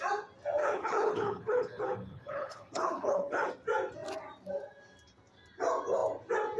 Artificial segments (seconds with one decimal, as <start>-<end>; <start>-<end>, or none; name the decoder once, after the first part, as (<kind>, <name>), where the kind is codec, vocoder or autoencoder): 0.6-3.5 (codec, HILCodec)